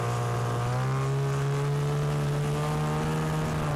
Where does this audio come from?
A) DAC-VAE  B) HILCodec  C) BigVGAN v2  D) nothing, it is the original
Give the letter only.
D